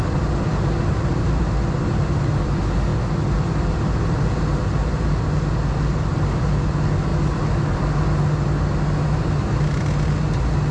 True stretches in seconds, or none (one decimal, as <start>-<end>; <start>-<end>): 0.0-0.5; 1.4-10.7